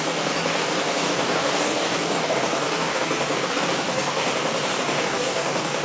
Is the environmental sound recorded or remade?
remade